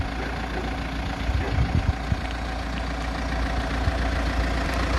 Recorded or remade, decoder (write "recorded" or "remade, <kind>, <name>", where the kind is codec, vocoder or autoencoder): recorded